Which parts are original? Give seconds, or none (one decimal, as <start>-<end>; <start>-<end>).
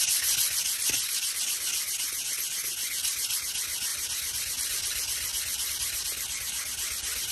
0.0-7.3